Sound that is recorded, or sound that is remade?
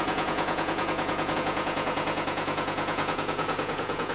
remade